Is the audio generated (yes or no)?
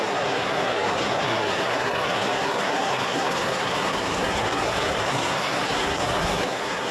yes